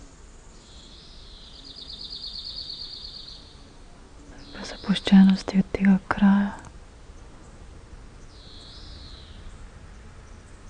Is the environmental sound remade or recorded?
recorded